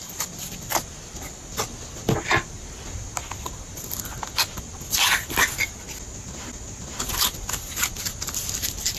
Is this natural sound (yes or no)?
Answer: yes